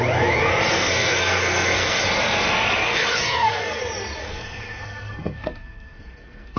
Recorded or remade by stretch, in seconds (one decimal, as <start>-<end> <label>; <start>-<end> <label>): 0.0-0.7 recorded; 0.7-2.0 remade; 2.0-2.8 recorded; 2.8-3.8 remade; 3.8-4.2 recorded; 4.2-6.6 remade